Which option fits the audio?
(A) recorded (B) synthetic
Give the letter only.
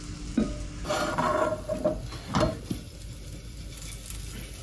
A